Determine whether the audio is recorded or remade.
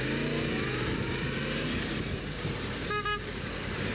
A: recorded